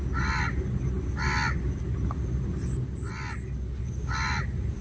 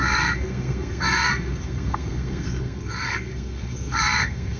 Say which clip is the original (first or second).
first